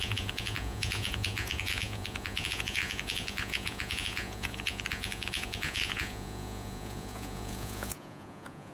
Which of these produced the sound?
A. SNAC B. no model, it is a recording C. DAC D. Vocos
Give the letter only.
D